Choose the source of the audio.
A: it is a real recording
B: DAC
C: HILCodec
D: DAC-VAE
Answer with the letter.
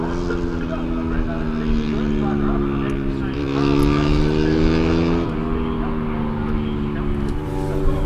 A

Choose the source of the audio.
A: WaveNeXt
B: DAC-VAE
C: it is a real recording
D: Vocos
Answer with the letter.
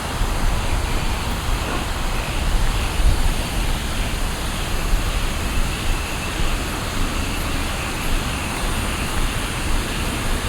C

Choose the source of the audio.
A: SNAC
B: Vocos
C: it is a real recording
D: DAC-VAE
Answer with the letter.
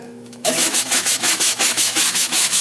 D